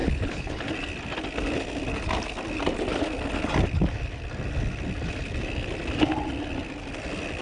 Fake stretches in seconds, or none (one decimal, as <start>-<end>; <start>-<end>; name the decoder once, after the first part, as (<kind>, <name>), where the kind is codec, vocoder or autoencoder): 0.0-0.6 (codec, HILCodec)